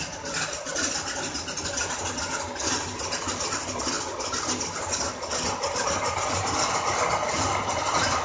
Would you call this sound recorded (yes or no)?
yes